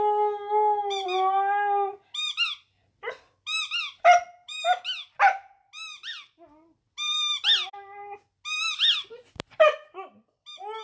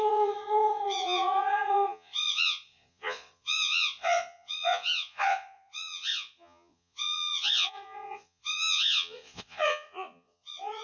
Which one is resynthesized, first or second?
second